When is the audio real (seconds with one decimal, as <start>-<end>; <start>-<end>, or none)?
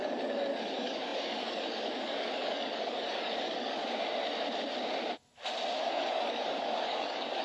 3.8-5.8